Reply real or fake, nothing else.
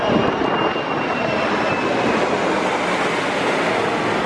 real